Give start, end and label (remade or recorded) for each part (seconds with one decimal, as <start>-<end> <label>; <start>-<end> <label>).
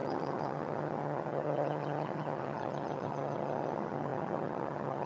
0.0-5.1 remade